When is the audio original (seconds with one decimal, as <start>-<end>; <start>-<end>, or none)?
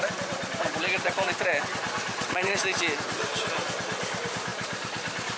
0.0-2.1; 2.6-5.4